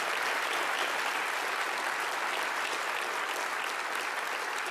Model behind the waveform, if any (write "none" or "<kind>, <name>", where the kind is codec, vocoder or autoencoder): none